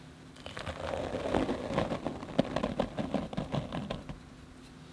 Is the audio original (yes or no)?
yes